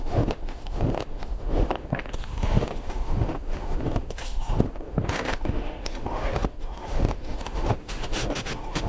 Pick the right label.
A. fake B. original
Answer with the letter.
A